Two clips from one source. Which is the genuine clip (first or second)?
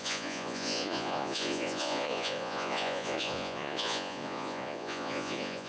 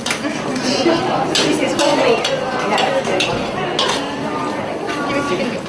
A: second